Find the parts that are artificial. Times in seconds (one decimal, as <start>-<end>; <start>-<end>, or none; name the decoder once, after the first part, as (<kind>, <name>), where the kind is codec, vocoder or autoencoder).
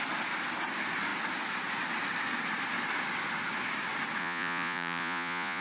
4.2-5.6 (vocoder, Vocos)